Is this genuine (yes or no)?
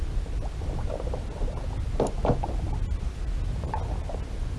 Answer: yes